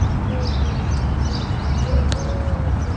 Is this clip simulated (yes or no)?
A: no